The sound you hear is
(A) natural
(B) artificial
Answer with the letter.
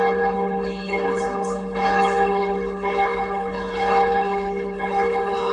B